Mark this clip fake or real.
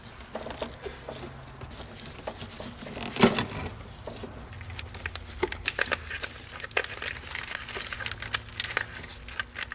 real